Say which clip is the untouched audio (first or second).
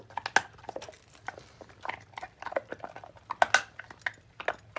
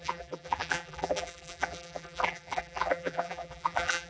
first